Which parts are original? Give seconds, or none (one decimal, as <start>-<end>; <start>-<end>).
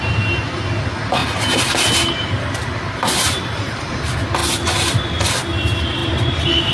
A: 0.0-1.2; 3.9-6.0